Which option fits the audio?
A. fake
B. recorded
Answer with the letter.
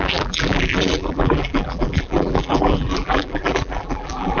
A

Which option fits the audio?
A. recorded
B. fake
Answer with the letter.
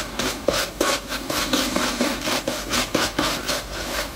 B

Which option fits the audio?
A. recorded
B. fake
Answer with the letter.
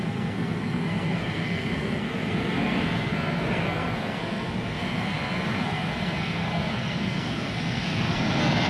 B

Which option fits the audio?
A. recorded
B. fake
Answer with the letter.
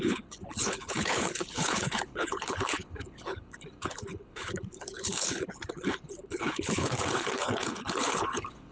B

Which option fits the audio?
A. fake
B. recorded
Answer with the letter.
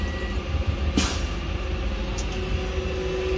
B